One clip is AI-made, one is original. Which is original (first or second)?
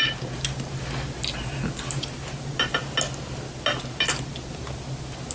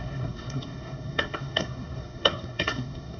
first